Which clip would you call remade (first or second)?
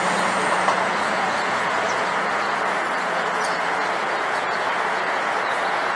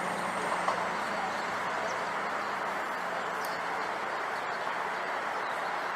first